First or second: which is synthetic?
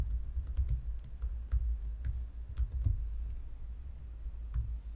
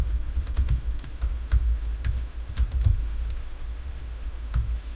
second